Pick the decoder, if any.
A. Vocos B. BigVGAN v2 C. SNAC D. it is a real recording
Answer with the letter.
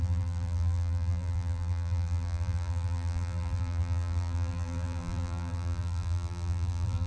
B